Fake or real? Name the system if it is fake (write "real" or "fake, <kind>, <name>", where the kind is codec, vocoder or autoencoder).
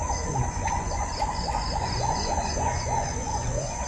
fake, vocoder, Vocos